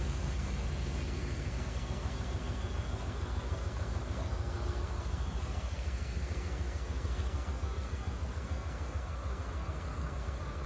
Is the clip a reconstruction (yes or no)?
yes